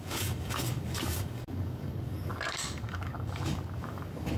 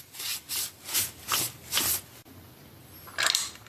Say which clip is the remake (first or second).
first